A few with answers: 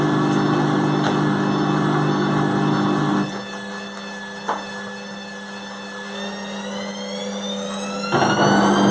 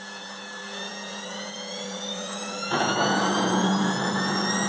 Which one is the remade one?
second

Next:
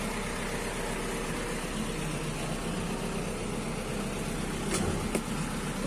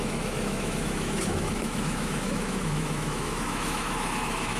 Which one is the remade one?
second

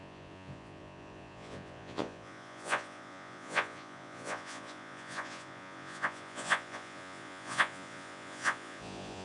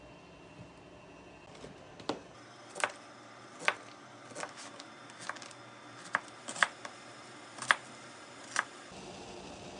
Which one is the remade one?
first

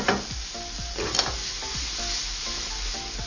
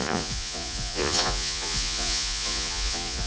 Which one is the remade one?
second